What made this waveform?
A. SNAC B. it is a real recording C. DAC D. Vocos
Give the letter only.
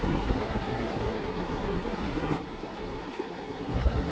A